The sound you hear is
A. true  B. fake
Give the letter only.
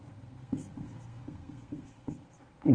B